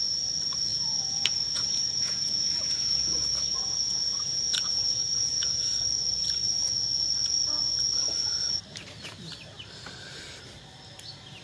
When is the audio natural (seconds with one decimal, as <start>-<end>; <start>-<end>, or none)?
0.0-0.7; 5.8-11.4